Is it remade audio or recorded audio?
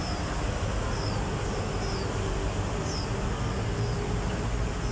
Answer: recorded